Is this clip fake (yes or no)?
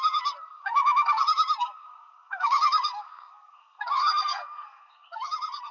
yes